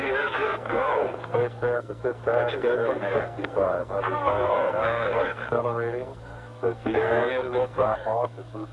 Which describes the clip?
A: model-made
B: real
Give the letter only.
A